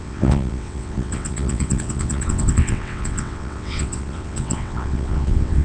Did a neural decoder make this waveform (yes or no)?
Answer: yes